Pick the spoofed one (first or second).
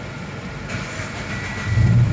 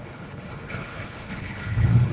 second